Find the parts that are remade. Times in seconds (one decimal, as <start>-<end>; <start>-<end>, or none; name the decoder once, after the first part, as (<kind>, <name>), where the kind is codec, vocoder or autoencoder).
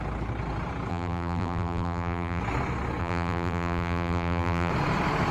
0.9-2.4 (vocoder, BigVGAN v2); 3.0-4.7